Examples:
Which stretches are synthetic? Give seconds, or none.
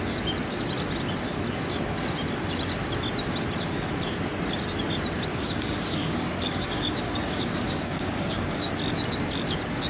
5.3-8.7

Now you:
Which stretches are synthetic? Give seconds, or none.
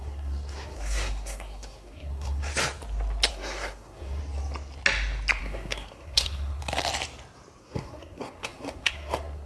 0.0-2.5; 3.3-4.2; 5.4-6.6; 7.6-9.5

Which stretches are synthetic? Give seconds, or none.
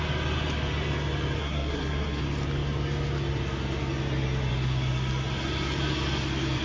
1.4-2.2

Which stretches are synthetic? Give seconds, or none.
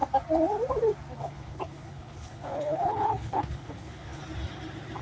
1.2-4.2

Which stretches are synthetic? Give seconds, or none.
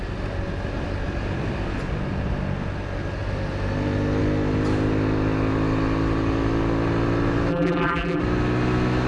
7.5-8.2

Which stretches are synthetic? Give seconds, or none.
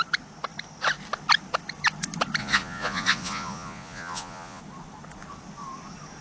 2.4-4.6